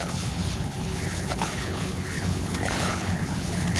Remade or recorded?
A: remade